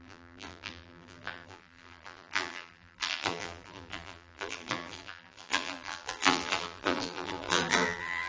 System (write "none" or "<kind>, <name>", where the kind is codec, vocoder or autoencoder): vocoder, BigVGAN v2